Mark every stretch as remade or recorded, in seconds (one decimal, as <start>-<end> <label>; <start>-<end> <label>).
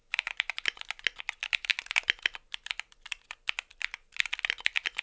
0.0-1.0 remade; 1.0-5.0 recorded